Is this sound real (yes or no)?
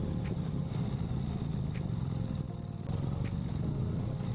yes